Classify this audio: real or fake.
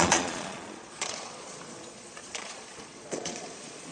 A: fake